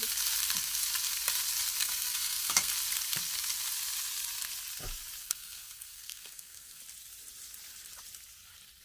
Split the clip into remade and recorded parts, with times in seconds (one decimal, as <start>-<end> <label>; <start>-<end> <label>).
0.0-1.8 recorded; 1.8-2.7 remade; 2.7-5.2 recorded; 5.2-6.8 remade; 6.8-8.8 recorded

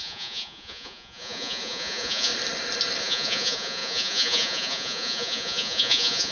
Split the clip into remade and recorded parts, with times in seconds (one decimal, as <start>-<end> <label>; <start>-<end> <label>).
0.0-2.3 remade; 2.3-3.0 recorded; 3.0-6.3 remade

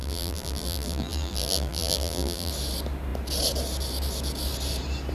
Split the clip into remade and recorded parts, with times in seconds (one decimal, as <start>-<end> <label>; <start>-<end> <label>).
0.0-2.5 remade; 2.5-5.1 recorded

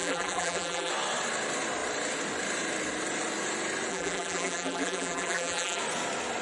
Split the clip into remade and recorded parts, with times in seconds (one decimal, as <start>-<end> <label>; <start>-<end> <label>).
0.0-0.9 remade; 0.9-3.9 recorded; 3.9-5.8 remade; 5.8-6.4 recorded

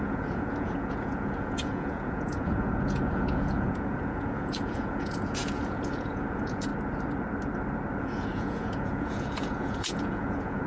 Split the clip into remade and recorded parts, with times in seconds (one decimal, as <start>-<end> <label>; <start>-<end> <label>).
0.0-6.7 remade; 6.7-8.0 recorded; 8.0-10.7 remade

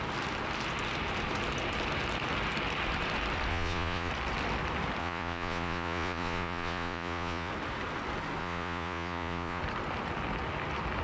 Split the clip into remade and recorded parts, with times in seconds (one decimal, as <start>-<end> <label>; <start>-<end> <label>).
0.0-3.5 recorded; 3.5-4.1 remade; 4.1-5.0 recorded; 5.0-7.5 remade; 7.5-8.4 recorded; 8.4-9.6 remade; 9.6-11.0 recorded

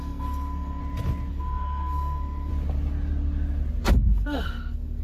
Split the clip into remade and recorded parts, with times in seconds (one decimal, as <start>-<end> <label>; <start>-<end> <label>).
0.0-0.8 remade; 0.8-1.3 recorded; 1.3-2.5 remade; 2.5-3.9 recorded; 3.9-5.0 remade

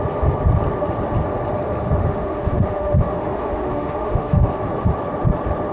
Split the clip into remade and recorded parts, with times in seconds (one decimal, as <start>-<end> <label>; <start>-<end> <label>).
0.0-2.0 recorded; 2.0-4.5 remade; 4.5-5.7 recorded